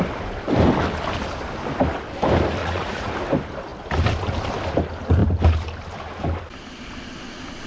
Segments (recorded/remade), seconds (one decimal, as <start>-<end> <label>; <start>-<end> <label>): 0.0-2.6 recorded; 2.6-3.1 remade; 3.1-7.7 recorded